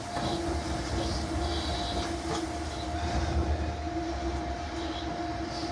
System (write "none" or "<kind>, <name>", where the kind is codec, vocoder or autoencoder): none